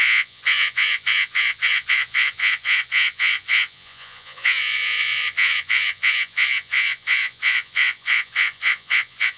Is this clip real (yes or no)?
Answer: no